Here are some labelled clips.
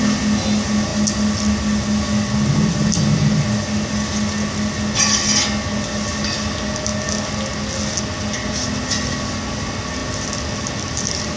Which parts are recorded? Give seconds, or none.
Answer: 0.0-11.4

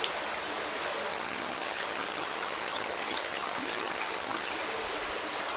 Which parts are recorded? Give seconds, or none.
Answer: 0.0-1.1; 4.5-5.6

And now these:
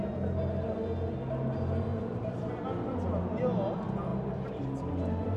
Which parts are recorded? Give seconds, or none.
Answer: 0.0-1.9; 2.5-5.4

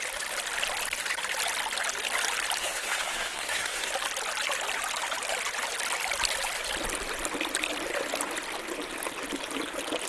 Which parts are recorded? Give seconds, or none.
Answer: 0.0-2.6; 3.9-10.1

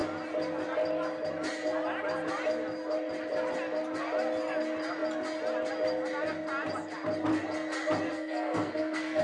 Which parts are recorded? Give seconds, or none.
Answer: 0.0-8.1

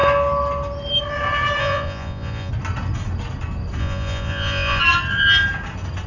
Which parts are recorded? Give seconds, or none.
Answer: 0.0-1.6; 2.5-3.8; 4.8-6.1

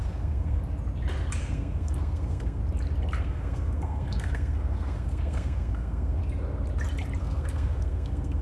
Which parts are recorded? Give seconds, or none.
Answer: 0.6-1.4; 2.6-3.2; 6.2-7.2